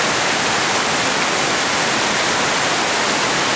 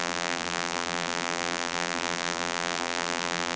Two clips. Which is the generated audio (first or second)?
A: second